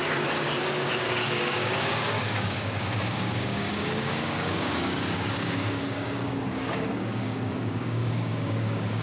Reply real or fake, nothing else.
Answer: fake